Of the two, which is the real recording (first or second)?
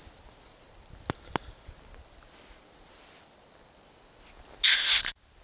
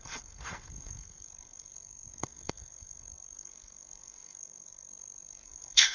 first